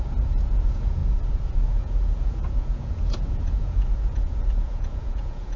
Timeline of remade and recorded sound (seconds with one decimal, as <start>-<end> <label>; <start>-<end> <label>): 0.0-5.6 remade